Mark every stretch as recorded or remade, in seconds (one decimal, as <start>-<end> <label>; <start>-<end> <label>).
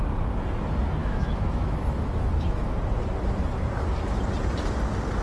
0.0-1.0 recorded; 1.0-2.8 remade; 2.8-5.2 recorded